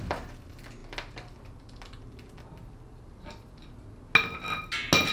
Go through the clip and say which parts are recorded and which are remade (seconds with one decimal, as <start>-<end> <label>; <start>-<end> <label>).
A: 0.0-5.1 recorded